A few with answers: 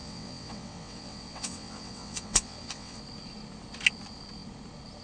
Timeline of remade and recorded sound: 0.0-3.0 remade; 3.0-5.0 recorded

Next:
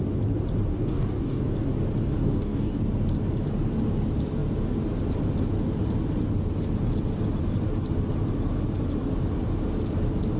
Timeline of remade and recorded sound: 0.0-0.7 recorded; 0.7-1.4 remade; 1.4-2.2 recorded; 2.2-2.8 remade; 2.8-10.4 recorded

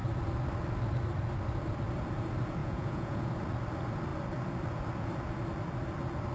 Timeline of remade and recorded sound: 0.0-2.6 recorded; 2.6-3.3 remade; 3.3-6.3 recorded

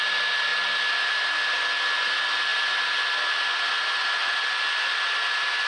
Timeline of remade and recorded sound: 0.0-4.2 recorded; 4.2-5.2 remade; 5.2-5.7 recorded

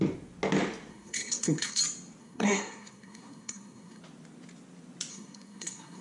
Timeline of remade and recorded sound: 0.0-0.9 recorded; 0.9-1.8 remade; 1.8-2.2 recorded; 2.2-4.0 remade; 4.0-5.1 recorded; 5.1-6.0 remade

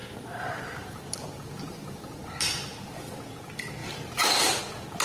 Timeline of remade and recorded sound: 0.0-3.0 remade; 3.0-3.8 recorded; 3.8-4.6 remade; 4.6-5.0 recorded